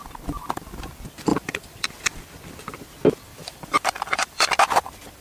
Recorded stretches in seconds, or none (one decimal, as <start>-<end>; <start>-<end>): 0.0-1.3; 1.9-3.3; 4.5-5.2